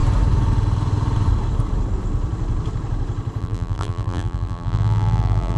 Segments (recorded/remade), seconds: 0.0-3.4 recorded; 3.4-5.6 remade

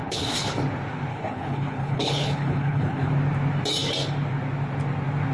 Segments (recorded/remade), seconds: 0.0-0.6 remade; 0.6-1.1 recorded; 1.1-3.1 remade; 3.1-5.3 recorded

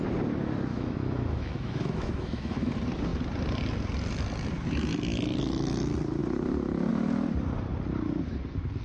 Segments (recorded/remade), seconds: 0.0-0.7 recorded; 0.7-2.7 remade; 2.7-8.8 recorded

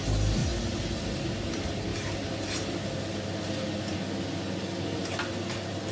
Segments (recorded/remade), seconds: 0.0-5.9 recorded

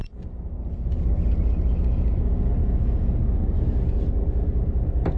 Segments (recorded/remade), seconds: 0.0-5.2 recorded

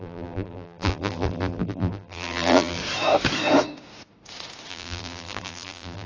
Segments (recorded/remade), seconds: 0.0-2.8 remade; 2.8-4.7 recorded; 4.7-6.1 remade

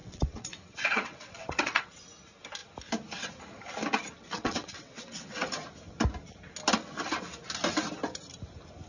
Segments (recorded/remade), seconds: 0.0-2.0 remade; 2.0-4.2 recorded; 4.2-5.5 remade; 5.5-8.9 recorded

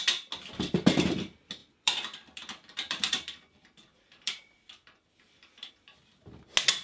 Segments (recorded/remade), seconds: 0.0-1.6 recorded; 1.6-5.7 remade; 5.7-6.8 recorded